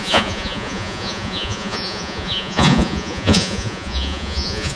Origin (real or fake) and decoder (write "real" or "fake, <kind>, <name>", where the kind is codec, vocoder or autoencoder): fake, vocoder, Vocos